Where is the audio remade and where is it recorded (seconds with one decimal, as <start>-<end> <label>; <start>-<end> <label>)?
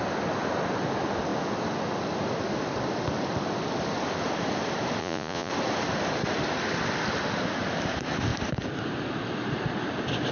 0.0-5.0 recorded; 5.0-5.5 remade; 5.5-10.3 recorded